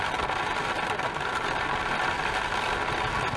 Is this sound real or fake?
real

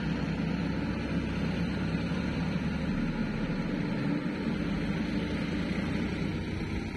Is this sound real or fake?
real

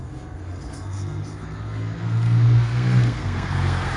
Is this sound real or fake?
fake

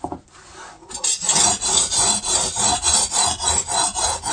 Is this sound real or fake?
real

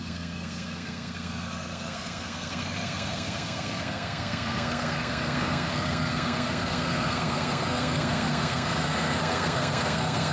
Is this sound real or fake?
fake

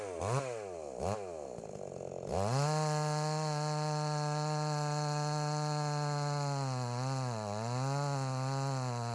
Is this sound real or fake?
real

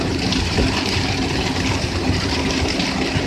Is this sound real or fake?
fake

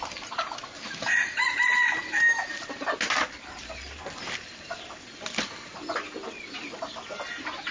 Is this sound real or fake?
real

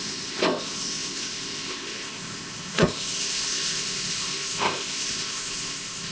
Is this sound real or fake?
fake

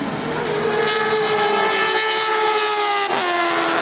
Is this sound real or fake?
real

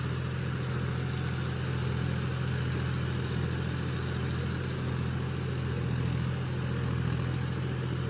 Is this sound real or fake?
real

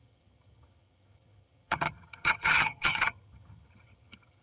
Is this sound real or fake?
fake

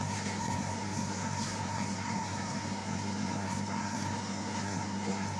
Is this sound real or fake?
fake